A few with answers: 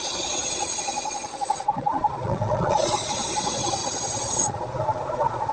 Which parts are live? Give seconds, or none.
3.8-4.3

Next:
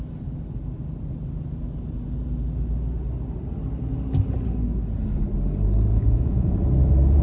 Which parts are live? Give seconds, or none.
0.0-5.9; 6.5-7.2

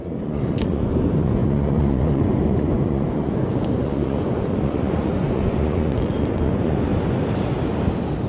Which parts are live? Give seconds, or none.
6.9-8.3